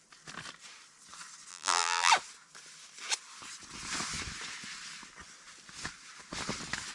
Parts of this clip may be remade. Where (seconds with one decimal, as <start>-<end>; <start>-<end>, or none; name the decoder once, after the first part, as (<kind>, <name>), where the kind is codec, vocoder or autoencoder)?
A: 1.5-2.1 (vocoder, BigVGAN v2)